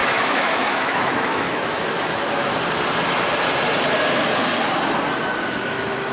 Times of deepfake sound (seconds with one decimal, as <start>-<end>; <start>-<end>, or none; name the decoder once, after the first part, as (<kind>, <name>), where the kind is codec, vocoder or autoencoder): 0.0-2.5 (autoencoder, DAC-VAE); 5.4-6.1